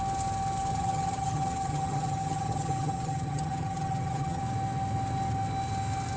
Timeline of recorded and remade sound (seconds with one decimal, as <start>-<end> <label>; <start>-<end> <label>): 0.0-0.7 recorded; 0.7-4.4 remade; 4.4-6.2 recorded